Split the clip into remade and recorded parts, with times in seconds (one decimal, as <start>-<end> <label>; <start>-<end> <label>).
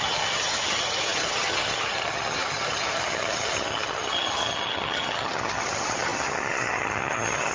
0.0-7.5 remade